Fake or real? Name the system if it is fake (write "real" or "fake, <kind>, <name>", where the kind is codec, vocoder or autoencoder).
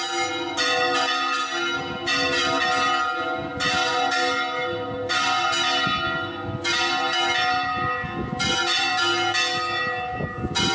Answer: real